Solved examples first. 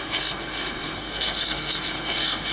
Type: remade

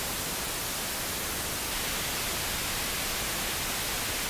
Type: recorded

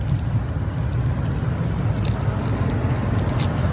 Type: recorded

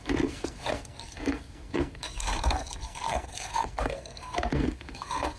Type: remade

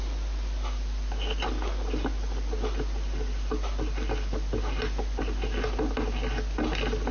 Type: recorded